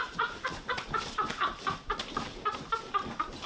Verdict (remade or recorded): remade